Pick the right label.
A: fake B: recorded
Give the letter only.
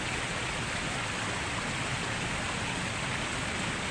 B